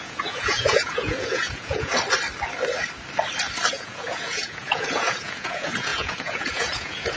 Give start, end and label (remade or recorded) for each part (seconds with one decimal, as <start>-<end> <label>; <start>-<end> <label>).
0.0-1.9 remade; 1.9-3.7 recorded; 3.7-7.2 remade